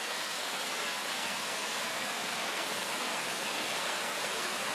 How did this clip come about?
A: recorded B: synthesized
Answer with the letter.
B